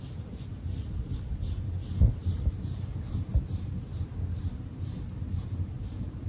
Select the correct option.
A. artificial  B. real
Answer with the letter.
B